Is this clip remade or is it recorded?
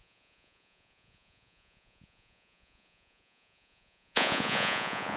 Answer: remade